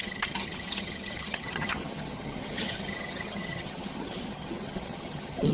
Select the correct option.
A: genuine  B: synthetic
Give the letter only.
B